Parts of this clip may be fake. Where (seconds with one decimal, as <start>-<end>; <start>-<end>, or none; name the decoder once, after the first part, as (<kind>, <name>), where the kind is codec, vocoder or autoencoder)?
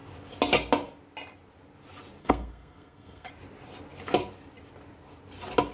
2.2-3.3 (codec, SNAC)